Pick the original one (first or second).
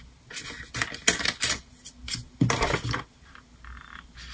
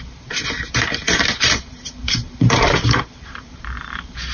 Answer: first